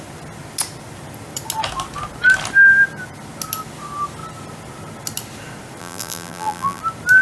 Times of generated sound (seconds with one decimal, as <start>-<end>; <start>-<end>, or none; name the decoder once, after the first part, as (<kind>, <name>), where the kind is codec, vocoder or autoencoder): 5.8-6.8 (vocoder, BigVGAN v2)